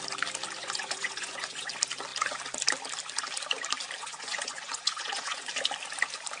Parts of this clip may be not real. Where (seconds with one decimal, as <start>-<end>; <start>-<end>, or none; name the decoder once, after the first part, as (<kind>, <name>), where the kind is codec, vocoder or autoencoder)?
0.6-1.7 (vocoder, Vocos); 4.0-5.5